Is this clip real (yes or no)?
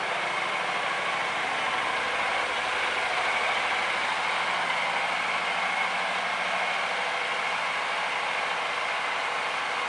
yes